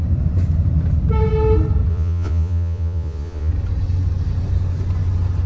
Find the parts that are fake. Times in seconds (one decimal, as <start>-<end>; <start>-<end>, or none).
1.9-3.5